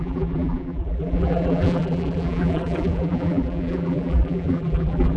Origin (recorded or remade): remade